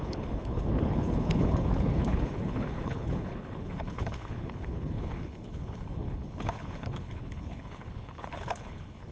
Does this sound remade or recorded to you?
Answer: remade